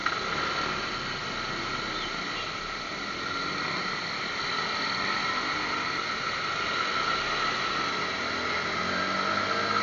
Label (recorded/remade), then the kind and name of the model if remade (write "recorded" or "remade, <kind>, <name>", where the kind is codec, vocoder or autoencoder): recorded